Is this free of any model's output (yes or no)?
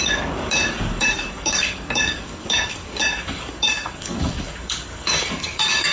no